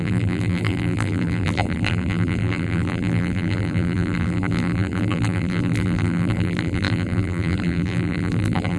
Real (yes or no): no